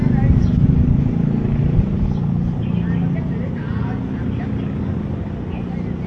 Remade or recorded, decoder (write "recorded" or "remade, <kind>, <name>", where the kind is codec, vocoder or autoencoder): recorded